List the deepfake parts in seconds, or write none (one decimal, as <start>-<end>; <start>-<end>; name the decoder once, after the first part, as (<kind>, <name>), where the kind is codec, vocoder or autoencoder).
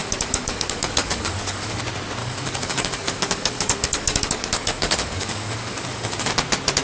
0.0-1.8 (codec, DAC); 2.2-6.3